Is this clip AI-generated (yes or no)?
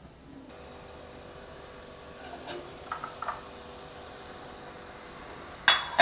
no